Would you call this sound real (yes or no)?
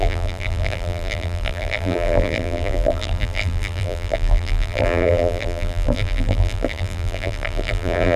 no